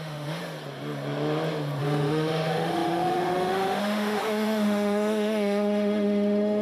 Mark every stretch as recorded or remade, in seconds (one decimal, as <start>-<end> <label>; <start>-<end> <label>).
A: 0.0-0.4 remade; 0.4-1.8 recorded; 1.8-6.6 remade